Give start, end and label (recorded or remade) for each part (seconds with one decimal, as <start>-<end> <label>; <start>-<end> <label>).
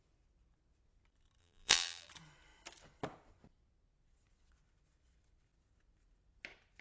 0.0-1.4 recorded; 1.4-2.1 remade; 2.1-6.8 recorded